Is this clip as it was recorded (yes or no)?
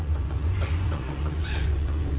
no